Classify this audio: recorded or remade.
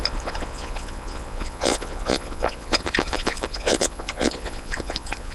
remade